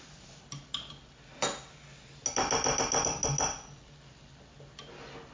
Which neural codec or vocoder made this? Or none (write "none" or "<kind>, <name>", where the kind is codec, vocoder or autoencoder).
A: none